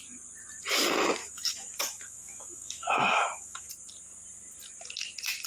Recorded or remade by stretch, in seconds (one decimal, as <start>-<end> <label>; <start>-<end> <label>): 0.0-1.2 recorded; 1.2-3.7 remade; 3.7-5.5 recorded